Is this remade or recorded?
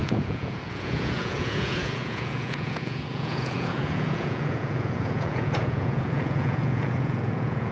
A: remade